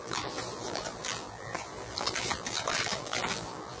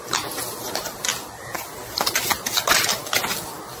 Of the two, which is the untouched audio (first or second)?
second